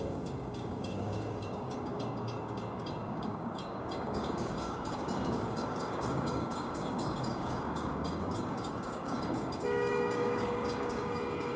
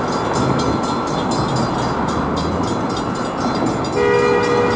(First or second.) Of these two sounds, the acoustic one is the second